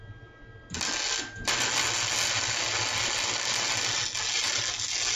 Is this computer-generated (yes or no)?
no